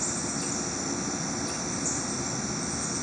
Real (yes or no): yes